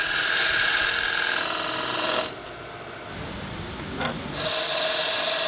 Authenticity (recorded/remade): recorded